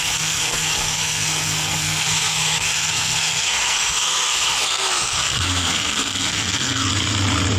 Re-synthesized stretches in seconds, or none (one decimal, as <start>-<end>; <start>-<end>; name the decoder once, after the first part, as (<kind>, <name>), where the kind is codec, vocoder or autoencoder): 0.0-6.9 (codec, SNAC)